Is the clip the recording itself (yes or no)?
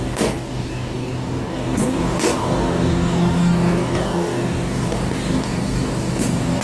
no